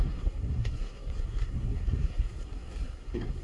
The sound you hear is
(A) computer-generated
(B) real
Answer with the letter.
A